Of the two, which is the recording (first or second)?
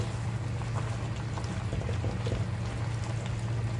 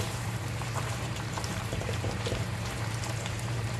first